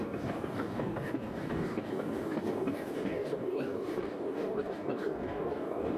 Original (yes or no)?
no